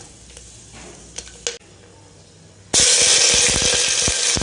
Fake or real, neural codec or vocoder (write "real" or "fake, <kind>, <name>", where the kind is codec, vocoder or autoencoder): real